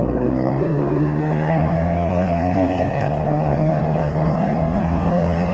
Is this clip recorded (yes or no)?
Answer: no